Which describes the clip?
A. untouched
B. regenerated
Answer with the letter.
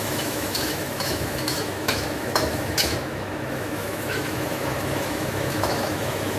B